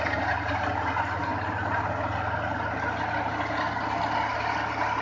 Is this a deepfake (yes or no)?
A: no